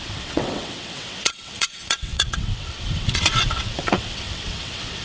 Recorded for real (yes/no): no